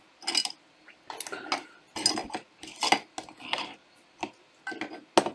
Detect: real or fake real